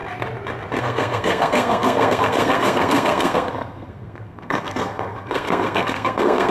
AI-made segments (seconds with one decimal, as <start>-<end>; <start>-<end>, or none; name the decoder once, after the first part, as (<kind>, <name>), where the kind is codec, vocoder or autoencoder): 0.8-6.5 (codec, SNAC)